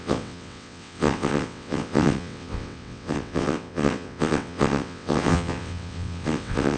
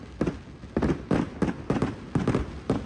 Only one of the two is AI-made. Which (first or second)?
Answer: first